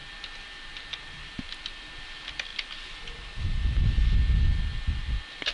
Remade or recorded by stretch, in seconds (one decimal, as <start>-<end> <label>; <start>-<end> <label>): 0.0-5.5 recorded